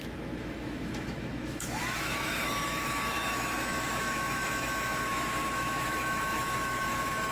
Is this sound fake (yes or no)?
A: yes